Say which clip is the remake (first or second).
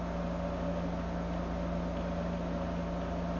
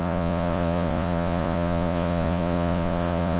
second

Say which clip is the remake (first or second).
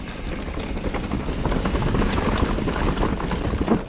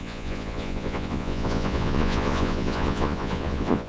second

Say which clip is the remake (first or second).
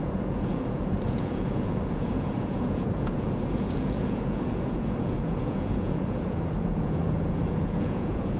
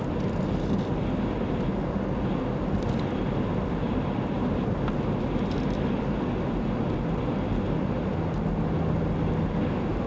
first